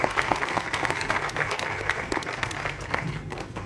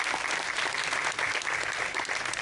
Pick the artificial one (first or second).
first